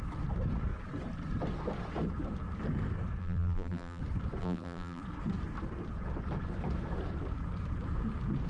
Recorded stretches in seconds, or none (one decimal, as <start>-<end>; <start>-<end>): 0.0-3.2; 4.0-4.4; 5.0-8.5